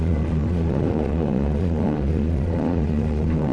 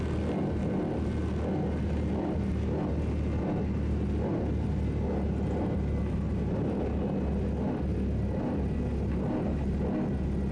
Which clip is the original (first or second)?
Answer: second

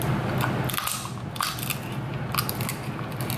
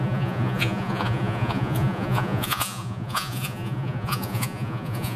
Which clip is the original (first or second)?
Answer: first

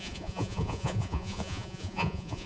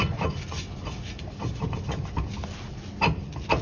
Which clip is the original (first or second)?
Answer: second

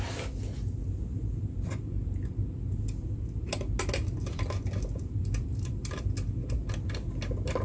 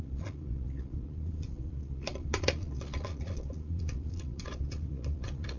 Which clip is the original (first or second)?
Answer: first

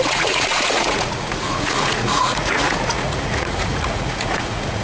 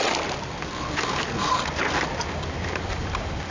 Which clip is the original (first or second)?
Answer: second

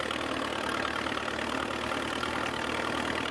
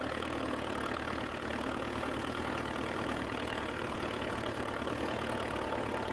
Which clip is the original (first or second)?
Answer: first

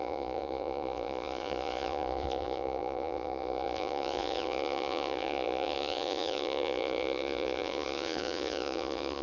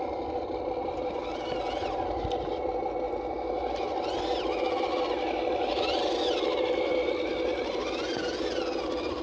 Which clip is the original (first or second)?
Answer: second